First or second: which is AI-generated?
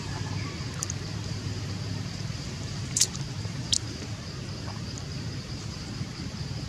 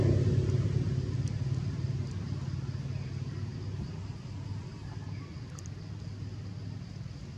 first